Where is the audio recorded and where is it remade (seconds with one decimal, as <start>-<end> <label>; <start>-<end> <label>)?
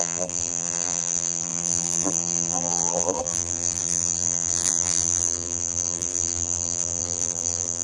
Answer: 0.0-7.8 remade